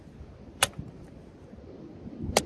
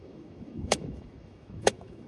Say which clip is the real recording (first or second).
first